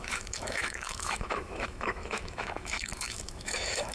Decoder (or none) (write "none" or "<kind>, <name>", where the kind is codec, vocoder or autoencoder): autoencoder, DAC-VAE